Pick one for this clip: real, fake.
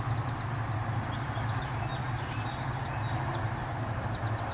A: real